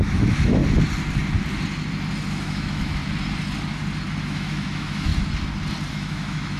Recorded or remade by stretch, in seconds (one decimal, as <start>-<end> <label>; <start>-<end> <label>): 0.0-0.6 remade; 0.6-2.3 recorded; 2.3-3.0 remade; 3.0-4.2 recorded; 4.2-5.1 remade; 5.1-5.9 recorded; 5.9-6.6 remade